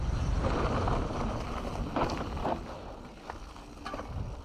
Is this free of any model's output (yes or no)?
yes